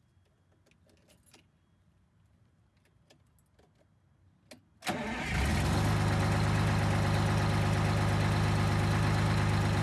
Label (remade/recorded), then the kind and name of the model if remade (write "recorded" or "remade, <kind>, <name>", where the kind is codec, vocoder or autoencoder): recorded